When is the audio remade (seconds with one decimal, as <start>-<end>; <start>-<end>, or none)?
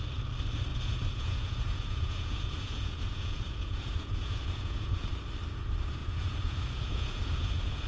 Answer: 0.7-5.1; 6.0-7.9